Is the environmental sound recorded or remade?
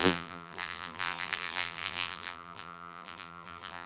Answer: remade